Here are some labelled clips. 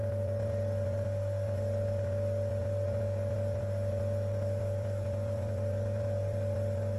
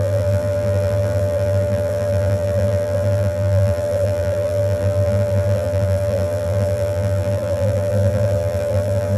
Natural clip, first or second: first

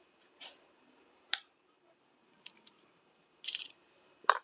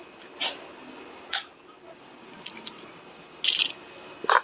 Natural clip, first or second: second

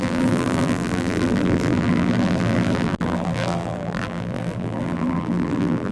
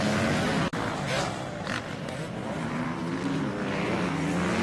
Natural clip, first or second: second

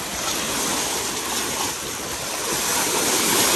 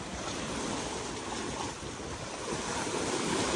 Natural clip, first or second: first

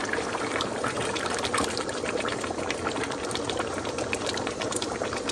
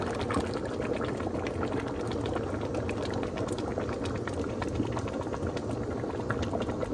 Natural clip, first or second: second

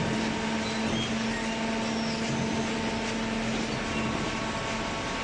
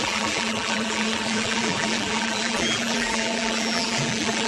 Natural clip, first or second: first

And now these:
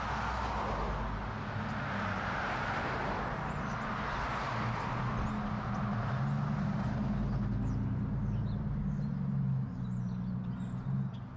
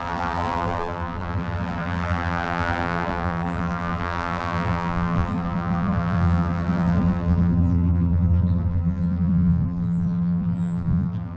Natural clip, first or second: first